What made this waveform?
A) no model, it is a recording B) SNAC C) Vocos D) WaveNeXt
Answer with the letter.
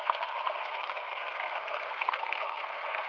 B